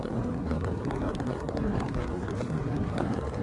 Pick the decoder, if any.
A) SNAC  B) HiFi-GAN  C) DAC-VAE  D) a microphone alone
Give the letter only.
A